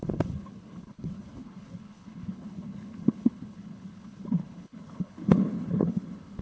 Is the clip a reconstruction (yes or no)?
yes